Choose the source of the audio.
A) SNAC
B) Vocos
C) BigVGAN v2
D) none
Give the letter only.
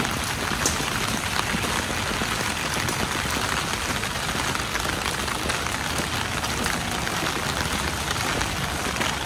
D